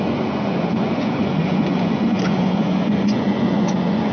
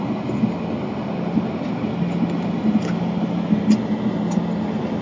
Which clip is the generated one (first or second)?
first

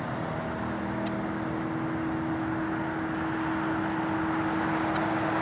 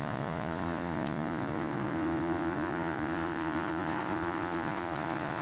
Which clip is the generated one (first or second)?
second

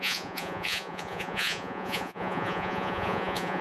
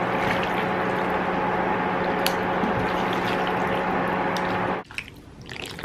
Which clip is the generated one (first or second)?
first